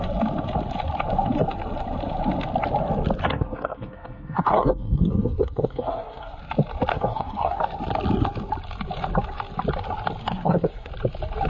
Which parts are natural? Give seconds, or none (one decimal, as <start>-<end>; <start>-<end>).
0.0-3.2; 6.4-6.9; 7.6-10.2; 10.9-11.5